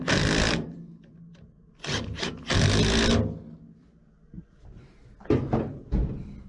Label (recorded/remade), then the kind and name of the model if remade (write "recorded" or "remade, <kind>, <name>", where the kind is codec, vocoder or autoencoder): recorded